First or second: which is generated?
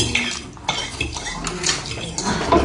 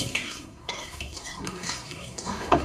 second